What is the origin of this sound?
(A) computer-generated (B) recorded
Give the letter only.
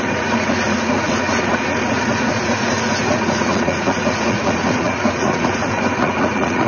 A